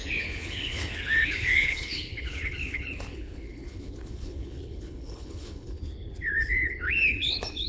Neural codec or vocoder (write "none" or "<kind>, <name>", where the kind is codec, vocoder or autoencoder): codec, HILCodec